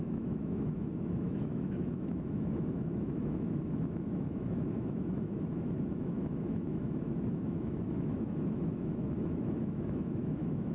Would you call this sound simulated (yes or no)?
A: yes